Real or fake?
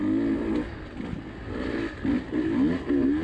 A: real